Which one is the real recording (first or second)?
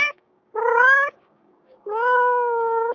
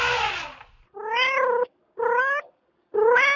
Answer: second